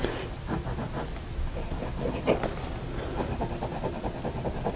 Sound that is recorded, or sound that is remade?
recorded